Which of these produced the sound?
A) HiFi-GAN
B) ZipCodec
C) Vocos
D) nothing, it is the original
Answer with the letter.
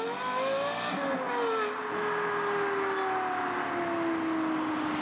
D